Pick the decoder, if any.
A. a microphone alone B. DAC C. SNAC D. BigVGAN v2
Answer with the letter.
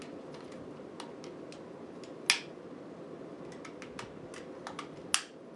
A